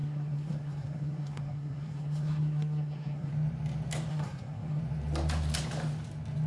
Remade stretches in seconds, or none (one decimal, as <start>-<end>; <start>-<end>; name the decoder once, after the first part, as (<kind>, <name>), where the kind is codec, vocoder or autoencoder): 0.0-3.3 (codec, SNAC); 4.1-4.8